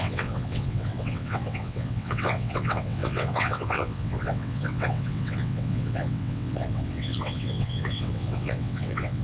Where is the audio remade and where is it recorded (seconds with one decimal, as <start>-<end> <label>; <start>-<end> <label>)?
0.0-9.2 remade